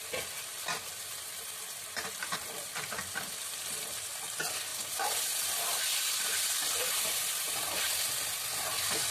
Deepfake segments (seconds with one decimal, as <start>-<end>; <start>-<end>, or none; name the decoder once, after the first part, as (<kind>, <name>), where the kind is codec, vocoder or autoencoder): 0.5-3.2 (vocoder, BigVGAN v2)